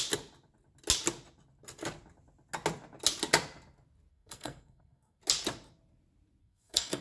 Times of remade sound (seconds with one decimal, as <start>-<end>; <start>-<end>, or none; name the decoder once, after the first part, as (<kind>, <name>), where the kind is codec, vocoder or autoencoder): 4.1-5.2 (codec, SNAC); 6.4-7.0